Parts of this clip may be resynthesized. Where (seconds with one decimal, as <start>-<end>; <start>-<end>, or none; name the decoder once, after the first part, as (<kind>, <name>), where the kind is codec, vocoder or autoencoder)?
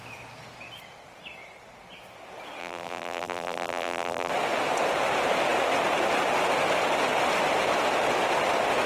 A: 2.6-4.3 (vocoder, BigVGAN v2)